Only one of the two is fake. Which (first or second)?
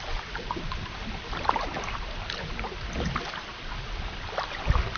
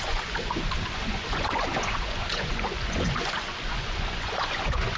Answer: second